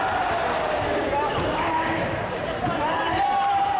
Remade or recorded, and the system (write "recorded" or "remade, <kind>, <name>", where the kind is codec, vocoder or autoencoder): remade, vocoder, BigVGAN v2